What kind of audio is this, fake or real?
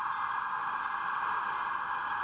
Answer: real